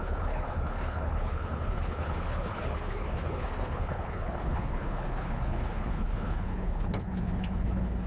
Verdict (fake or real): fake